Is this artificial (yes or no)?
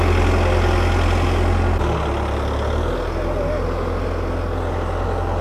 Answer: no